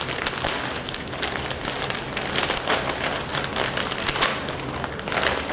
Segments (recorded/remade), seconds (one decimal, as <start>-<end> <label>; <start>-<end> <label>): 0.0-5.5 recorded